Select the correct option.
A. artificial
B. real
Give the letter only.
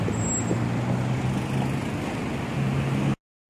B